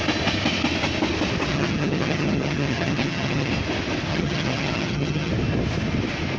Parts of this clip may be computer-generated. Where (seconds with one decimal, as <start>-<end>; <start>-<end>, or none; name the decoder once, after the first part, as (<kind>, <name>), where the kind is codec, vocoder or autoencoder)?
1.5-3.5 (vocoder, HiFi-GAN); 4.1-5.3